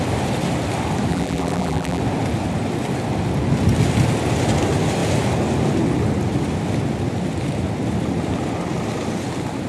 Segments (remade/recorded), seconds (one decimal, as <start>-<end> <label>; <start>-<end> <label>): 0.0-1.1 recorded; 1.1-2.0 remade; 2.0-9.7 recorded

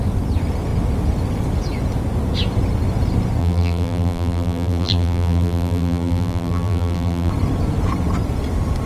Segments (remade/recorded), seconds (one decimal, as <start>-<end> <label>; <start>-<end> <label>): 0.0-3.4 recorded; 3.4-7.3 remade; 7.3-8.9 recorded

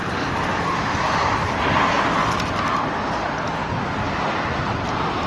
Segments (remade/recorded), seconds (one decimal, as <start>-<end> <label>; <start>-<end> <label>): 0.0-2.2 remade; 2.2-3.9 recorded; 3.9-5.3 remade

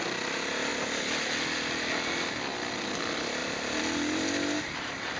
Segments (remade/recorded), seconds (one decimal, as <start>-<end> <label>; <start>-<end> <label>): 0.0-0.7 recorded; 0.7-1.9 remade; 1.9-3.4 recorded; 3.4-4.6 remade; 4.6-5.2 recorded

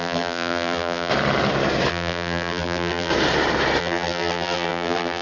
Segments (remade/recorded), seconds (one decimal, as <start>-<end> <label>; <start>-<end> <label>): 0.0-1.1 remade; 1.1-1.9 recorded; 1.9-3.1 remade; 3.1-3.8 recorded; 3.8-5.2 remade

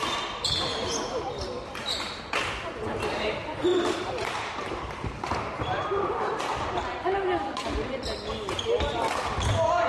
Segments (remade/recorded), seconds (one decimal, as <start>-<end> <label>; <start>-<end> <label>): 0.0-0.7 recorded; 0.7-2.2 remade; 2.2-3.7 recorded; 3.7-6.4 remade; 6.4-9.9 recorded